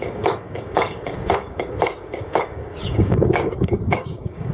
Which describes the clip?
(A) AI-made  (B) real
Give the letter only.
A